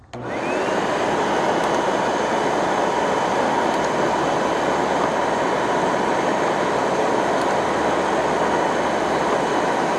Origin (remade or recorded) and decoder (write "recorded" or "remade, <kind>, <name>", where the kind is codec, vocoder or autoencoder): recorded